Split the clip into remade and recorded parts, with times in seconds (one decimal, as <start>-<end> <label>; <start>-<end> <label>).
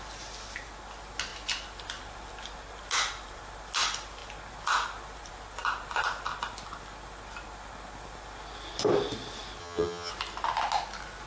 0.0-9.6 recorded; 9.6-10.1 remade; 10.1-11.3 recorded